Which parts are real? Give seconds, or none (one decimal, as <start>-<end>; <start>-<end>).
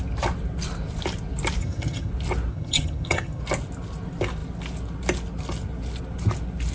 0.0-1.6; 2.1-2.5; 3.4-6.7